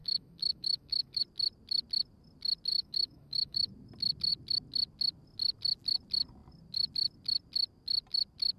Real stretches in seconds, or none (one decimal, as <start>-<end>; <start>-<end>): 1.2-2.7; 3.7-8.6